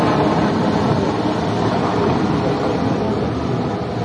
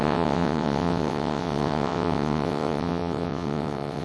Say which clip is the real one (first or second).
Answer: first